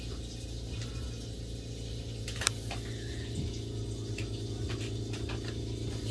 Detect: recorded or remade recorded